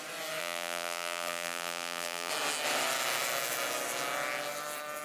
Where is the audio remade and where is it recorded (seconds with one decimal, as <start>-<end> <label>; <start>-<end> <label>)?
0.0-0.4 recorded; 0.4-2.3 remade; 2.3-5.0 recorded